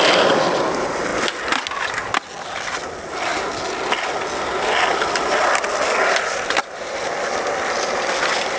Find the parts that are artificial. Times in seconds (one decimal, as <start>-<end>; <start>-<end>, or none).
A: none